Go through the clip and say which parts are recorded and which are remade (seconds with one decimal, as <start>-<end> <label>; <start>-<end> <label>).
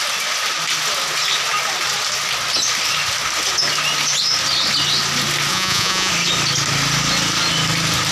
0.0-5.5 recorded; 5.5-6.1 remade; 6.1-8.1 recorded